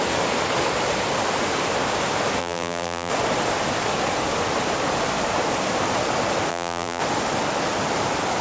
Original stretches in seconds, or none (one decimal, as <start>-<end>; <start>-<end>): 0.0-2.4; 3.1-6.5; 7.0-8.4